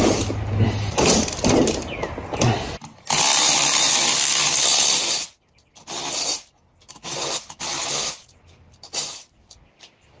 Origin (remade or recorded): recorded